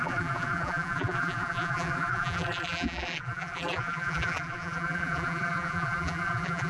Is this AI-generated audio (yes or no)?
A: yes